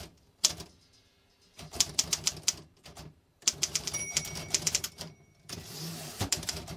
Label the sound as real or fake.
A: fake